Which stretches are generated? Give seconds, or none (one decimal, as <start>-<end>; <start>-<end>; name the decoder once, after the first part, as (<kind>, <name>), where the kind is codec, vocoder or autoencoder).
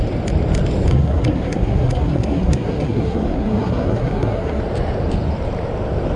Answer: 0.9-4.6 (codec, SNAC)